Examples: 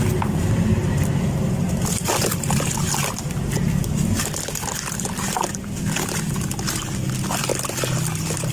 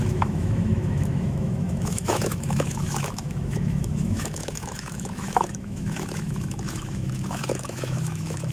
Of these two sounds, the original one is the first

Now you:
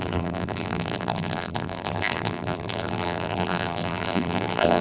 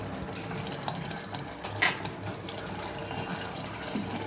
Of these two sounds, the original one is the second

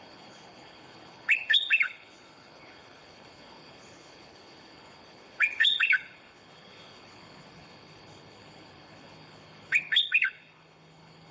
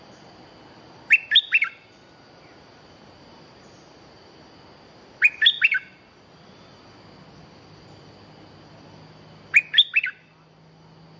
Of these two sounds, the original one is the second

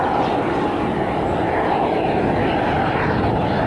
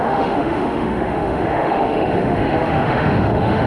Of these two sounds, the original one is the first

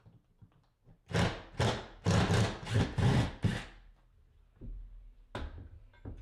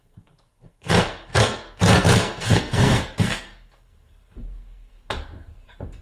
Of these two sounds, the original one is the first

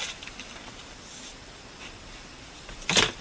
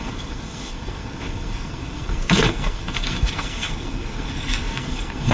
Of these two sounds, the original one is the first